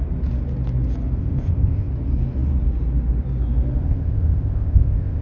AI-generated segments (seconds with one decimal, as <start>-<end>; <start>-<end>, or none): 1.2-1.9; 3.8-5.2